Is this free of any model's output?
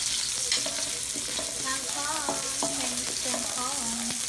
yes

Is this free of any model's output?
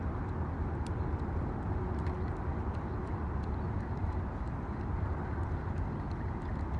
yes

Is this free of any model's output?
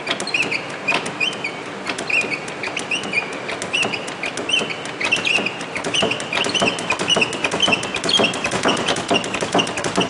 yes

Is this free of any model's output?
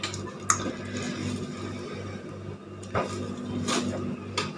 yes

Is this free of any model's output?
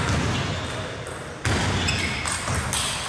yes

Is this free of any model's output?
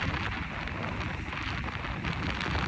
yes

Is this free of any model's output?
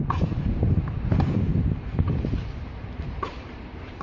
no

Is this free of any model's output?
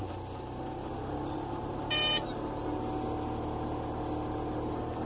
yes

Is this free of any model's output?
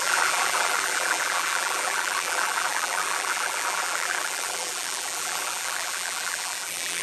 no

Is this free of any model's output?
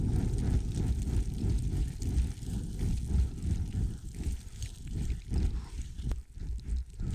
yes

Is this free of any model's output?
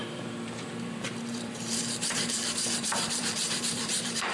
no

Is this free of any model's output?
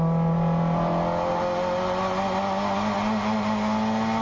yes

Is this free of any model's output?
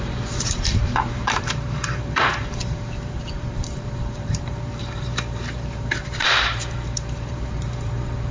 no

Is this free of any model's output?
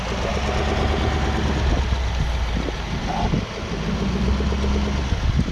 yes